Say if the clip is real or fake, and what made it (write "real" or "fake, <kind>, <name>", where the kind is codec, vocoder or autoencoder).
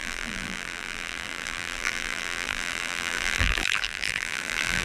fake, vocoder, BigVGAN v2